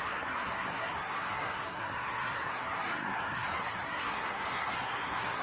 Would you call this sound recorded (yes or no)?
no